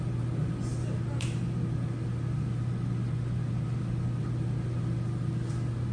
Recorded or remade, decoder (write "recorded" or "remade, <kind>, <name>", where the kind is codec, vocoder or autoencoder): recorded